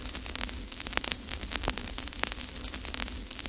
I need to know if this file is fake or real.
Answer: real